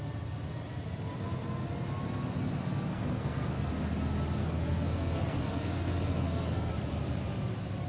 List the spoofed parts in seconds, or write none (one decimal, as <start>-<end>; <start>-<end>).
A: 2.9-3.7; 4.4-6.7